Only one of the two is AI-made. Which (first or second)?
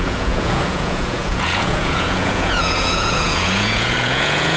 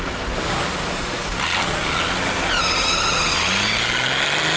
first